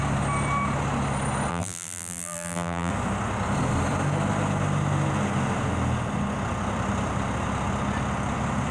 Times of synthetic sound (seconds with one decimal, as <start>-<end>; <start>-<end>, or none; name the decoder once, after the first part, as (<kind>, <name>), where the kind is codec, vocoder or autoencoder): 1.5-2.9 (vocoder, BigVGAN v2)